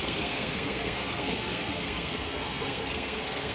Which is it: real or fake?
fake